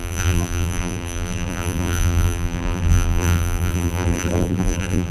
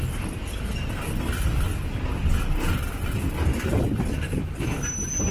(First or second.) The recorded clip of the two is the second